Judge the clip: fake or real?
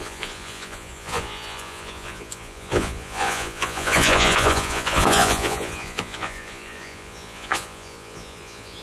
fake